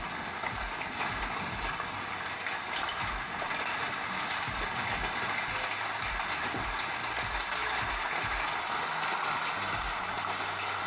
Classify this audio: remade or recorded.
recorded